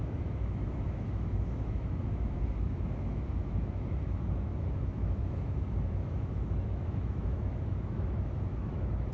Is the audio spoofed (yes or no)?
yes